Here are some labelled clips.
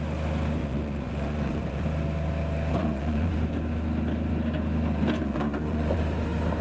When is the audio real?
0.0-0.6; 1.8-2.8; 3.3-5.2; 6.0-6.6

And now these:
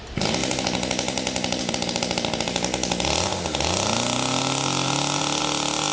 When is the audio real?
0.0-5.9